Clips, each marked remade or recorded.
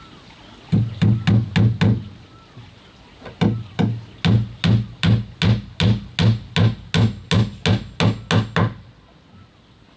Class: recorded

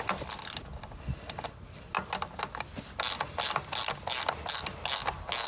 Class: recorded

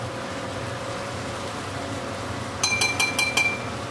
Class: recorded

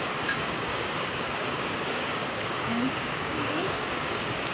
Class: remade